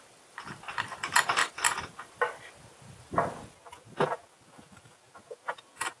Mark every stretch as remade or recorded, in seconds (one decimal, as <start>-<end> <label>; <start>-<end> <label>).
0.0-6.0 recorded